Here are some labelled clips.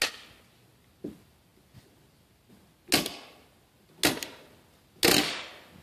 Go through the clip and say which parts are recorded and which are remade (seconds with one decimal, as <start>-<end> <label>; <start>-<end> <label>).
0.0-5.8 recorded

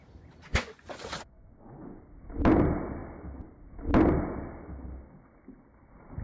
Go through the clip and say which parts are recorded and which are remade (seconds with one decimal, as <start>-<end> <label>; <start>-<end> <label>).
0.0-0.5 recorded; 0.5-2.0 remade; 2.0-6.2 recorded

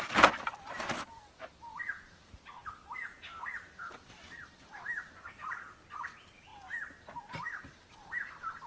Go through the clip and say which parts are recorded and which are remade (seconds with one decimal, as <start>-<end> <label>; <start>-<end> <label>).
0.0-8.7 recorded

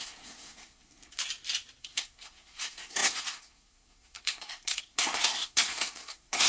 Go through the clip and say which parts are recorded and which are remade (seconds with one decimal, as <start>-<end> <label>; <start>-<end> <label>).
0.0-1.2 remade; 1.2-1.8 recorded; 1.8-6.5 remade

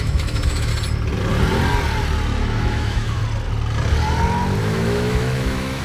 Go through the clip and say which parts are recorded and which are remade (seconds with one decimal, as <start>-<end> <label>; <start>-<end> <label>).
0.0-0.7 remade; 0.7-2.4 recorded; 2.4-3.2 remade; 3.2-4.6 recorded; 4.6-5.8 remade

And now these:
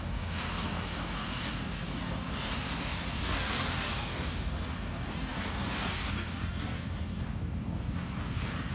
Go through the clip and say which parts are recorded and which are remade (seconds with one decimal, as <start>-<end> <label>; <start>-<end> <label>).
0.0-8.7 remade